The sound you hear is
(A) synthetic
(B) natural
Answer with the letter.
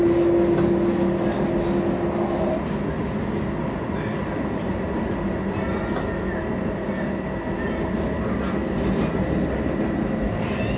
B